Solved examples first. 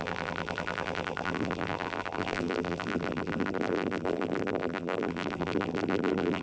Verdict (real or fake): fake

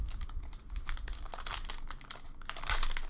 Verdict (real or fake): real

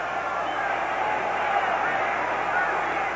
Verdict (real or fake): real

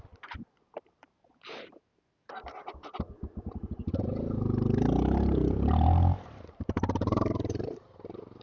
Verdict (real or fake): fake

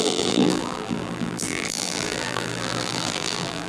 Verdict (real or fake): fake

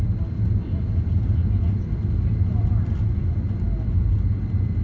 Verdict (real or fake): real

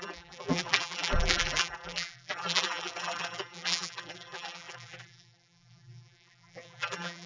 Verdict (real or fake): fake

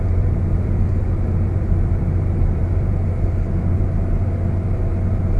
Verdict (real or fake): fake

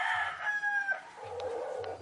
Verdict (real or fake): fake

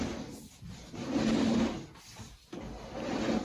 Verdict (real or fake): real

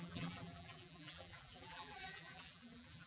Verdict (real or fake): fake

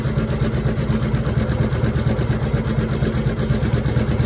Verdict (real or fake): real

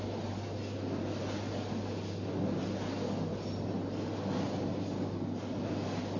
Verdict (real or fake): real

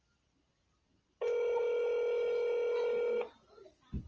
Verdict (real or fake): real